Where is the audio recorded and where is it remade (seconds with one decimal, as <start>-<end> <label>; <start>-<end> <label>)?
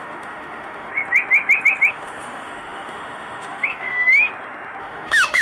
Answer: 0.0-0.9 remade; 0.9-1.9 recorded; 1.9-4.3 remade; 4.3-4.8 recorded; 4.8-5.4 remade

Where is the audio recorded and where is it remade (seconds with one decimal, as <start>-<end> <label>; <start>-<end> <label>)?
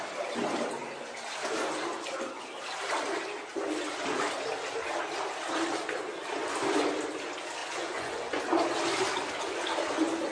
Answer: 0.0-7.6 recorded; 7.6-8.4 remade; 8.4-10.3 recorded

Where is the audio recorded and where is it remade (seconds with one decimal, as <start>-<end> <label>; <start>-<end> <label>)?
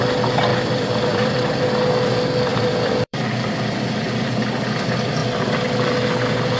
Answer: 0.0-0.5 recorded; 0.5-1.6 remade; 1.6-2.5 recorded; 2.5-3.4 remade; 3.4-6.6 recorded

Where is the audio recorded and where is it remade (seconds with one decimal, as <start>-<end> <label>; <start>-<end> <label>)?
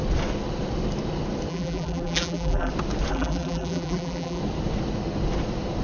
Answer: 0.0-1.5 recorded; 1.5-2.7 remade; 2.7-3.1 recorded; 3.1-4.4 remade; 4.4-5.8 recorded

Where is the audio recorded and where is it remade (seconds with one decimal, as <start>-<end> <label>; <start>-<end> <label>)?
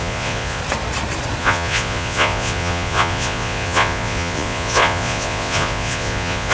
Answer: 0.0-0.6 remade; 0.6-1.4 recorded; 1.4-6.5 remade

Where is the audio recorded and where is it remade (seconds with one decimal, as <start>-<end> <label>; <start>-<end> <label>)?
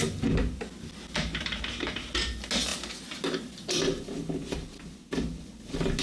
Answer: 0.0-6.0 recorded